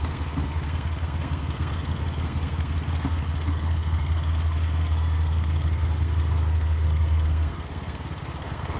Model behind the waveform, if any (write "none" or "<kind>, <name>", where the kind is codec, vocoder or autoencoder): codec, SNAC